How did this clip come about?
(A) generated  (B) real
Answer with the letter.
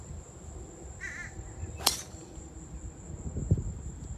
B